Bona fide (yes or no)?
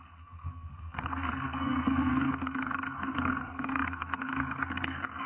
no